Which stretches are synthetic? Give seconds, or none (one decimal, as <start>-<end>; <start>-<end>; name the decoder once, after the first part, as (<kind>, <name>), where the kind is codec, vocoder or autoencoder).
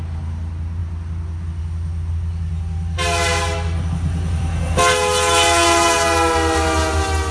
none